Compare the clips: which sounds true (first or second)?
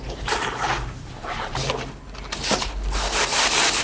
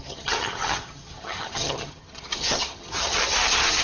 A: first